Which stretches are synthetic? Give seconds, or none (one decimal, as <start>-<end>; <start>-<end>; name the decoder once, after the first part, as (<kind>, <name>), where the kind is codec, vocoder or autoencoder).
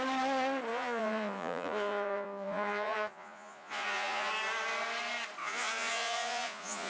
0.7-4.3 (vocoder, Vocos); 5.4-6.9